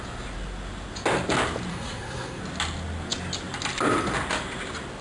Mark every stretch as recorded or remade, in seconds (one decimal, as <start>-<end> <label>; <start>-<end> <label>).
0.0-1.7 recorded; 1.7-2.4 remade; 2.4-5.0 recorded